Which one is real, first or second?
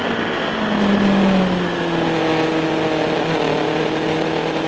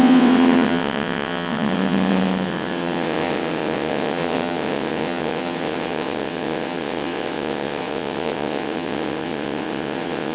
first